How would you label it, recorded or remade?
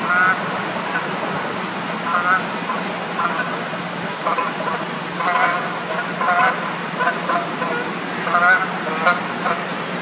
recorded